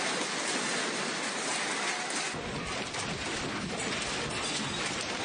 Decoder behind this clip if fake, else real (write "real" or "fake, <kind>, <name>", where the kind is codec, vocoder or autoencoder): real